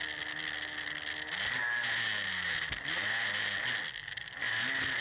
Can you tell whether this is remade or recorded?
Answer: recorded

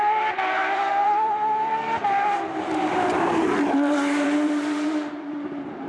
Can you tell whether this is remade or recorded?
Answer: remade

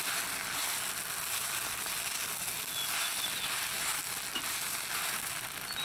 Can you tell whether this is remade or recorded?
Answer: recorded